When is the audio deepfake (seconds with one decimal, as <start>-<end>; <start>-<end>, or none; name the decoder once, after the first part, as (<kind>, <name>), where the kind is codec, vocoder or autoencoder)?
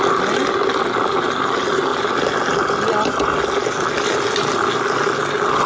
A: none